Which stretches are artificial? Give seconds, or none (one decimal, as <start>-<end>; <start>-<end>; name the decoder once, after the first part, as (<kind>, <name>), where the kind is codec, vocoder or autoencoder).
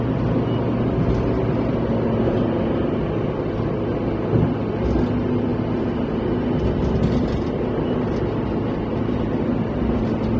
none